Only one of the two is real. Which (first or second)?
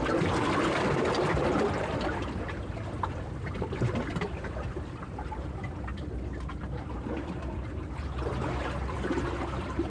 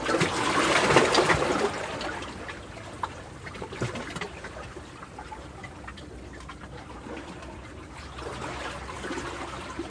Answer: second